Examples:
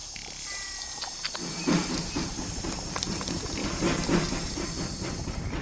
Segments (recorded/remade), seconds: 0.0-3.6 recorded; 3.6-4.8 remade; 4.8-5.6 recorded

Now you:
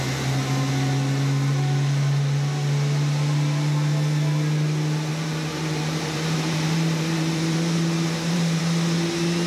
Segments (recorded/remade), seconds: 0.0-5.1 recorded; 5.1-8.6 remade; 8.6-9.5 recorded

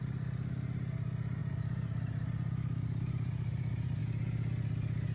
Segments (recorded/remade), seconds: 0.0-1.4 recorded; 1.4-4.0 remade; 4.0-5.1 recorded

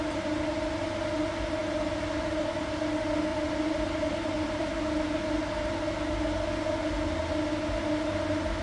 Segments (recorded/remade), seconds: 0.0-3.3 recorded; 3.3-5.0 remade; 5.0-8.6 recorded